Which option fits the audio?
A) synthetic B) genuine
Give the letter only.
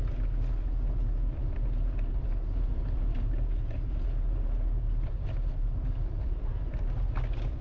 B